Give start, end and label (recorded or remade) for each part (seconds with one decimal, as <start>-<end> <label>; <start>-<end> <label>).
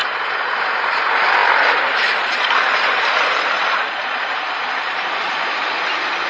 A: 0.0-0.5 remade; 0.5-1.4 recorded; 1.4-5.2 remade; 5.2-6.3 recorded